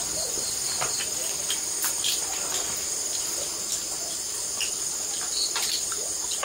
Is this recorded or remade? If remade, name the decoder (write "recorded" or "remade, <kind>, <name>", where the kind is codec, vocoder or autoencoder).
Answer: recorded